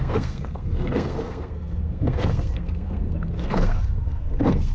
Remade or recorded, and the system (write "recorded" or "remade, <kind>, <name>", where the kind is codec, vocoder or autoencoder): remade, codec, SNAC